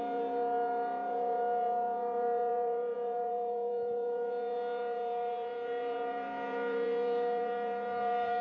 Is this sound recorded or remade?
remade